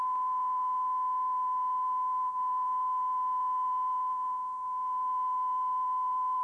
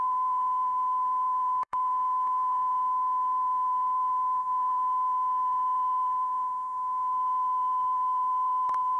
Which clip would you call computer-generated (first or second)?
second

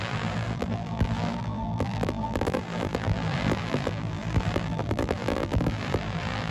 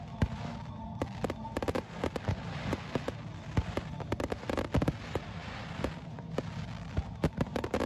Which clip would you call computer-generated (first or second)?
first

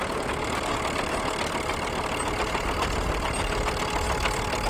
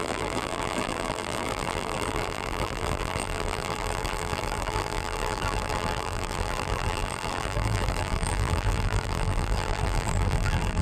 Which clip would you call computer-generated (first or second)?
second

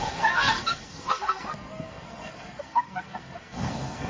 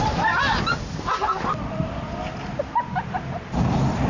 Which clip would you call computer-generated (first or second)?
first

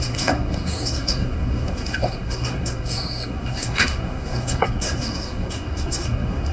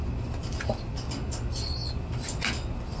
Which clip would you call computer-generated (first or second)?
first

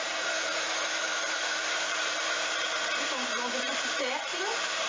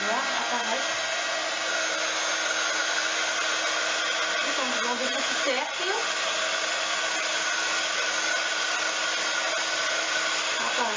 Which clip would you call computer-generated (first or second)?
first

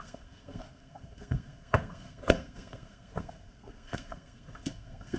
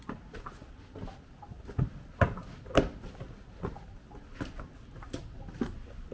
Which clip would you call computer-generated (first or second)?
first